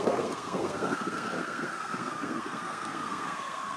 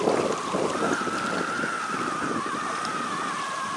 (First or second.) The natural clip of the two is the second